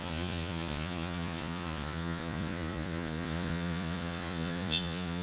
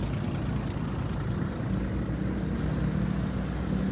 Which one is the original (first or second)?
second